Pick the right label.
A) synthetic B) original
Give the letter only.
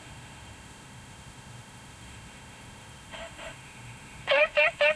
A